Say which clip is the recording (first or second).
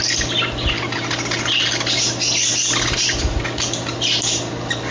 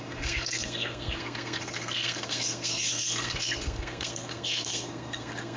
first